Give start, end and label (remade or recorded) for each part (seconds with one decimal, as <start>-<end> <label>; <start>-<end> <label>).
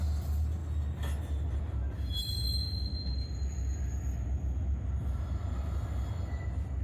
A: 0.0-6.8 recorded